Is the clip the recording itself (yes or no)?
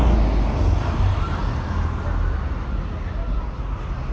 yes